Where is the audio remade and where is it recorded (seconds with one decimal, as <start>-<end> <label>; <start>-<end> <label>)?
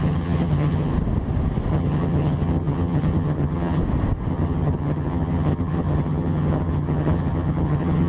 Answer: 0.0-0.9 remade; 0.9-1.7 recorded; 1.7-3.8 remade; 3.8-4.3 recorded; 4.3-8.1 remade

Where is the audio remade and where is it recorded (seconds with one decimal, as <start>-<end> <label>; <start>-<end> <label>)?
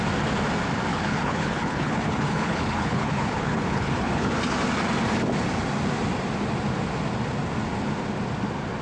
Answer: 0.0-0.9 recorded; 0.9-4.3 remade; 4.3-8.8 recorded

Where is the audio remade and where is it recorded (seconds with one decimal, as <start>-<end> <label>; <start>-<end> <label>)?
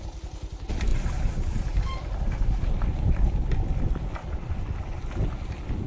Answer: 0.0-0.9 recorded; 0.9-3.1 remade; 3.1-4.2 recorded; 4.2-5.0 remade; 5.0-5.9 recorded